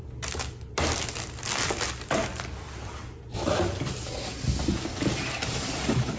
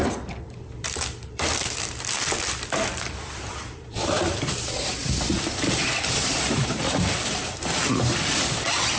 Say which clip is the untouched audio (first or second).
first